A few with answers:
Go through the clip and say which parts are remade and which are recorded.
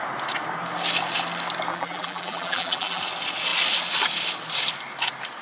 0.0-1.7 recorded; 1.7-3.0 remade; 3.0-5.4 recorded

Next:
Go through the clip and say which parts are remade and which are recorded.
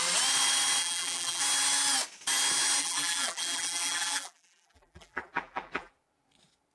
0.0-0.8 recorded; 0.8-1.4 remade; 1.4-2.8 recorded; 2.8-5.9 remade; 5.9-6.7 recorded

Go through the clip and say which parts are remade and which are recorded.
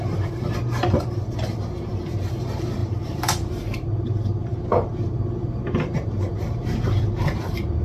0.0-7.8 remade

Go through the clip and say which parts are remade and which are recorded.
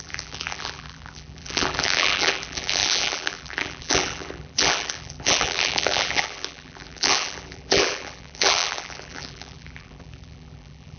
0.0-11.0 remade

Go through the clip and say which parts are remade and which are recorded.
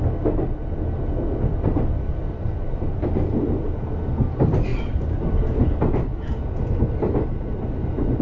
0.0-2.1 recorded; 2.1-3.5 remade; 3.5-4.7 recorded; 4.7-6.1 remade; 6.1-8.2 recorded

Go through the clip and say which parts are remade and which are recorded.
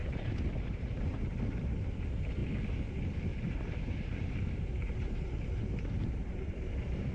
0.0-1.4 remade; 1.4-3.3 recorded; 3.3-7.1 remade